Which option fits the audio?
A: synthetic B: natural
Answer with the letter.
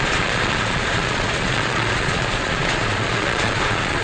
A